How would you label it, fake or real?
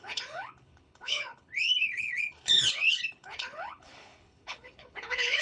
fake